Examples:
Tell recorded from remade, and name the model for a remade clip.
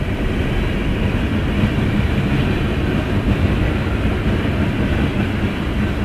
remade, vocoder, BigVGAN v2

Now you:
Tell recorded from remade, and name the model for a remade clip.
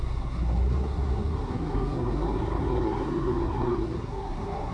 remade, codec, SNAC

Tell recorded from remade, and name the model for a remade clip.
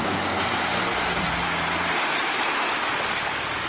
recorded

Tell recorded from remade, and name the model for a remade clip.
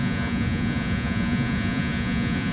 remade, vocoder, Vocos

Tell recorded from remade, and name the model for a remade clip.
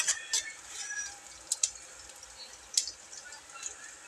recorded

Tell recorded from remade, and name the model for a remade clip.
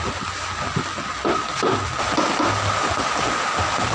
recorded